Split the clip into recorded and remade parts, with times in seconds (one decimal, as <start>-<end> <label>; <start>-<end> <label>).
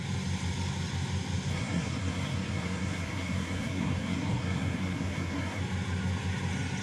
0.0-1.5 recorded; 1.5-5.6 remade; 5.6-6.8 recorded